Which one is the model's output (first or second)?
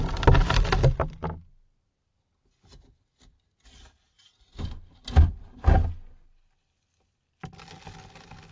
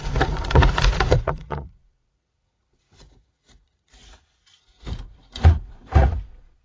second